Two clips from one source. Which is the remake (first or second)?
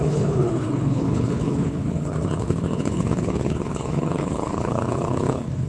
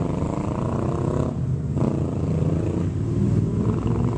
first